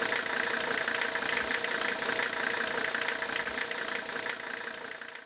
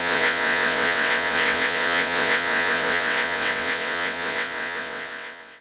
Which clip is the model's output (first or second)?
second